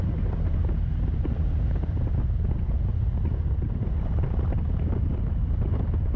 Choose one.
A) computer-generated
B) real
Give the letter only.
B